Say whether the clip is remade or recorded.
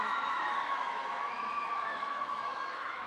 remade